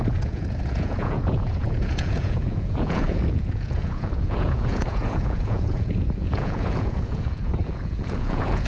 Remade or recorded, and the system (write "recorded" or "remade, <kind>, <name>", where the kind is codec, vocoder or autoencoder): remade, vocoder, Vocos